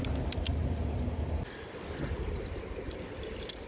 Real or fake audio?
real